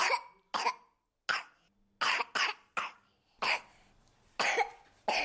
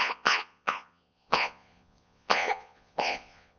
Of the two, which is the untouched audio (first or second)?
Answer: first